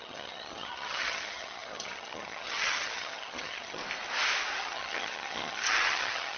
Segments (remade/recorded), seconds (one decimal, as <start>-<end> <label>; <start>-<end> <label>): 0.0-3.8 remade; 3.8-4.6 recorded; 4.6-6.4 remade